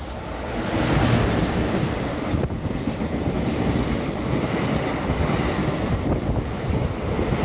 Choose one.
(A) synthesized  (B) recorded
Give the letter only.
B